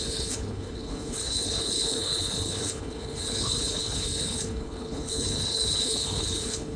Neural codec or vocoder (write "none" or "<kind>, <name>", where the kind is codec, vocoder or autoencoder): codec, HILCodec